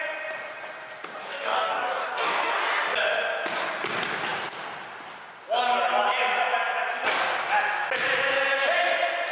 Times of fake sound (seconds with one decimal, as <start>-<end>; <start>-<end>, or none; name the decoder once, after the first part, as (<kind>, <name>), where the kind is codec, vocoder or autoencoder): 1.2-2.5 (codec, DAC)